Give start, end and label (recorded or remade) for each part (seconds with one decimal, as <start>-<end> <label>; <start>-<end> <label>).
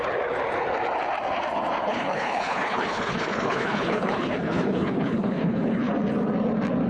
0.0-1.8 recorded; 1.8-5.9 remade; 5.9-6.9 recorded